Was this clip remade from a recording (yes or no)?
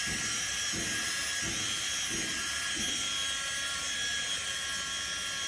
no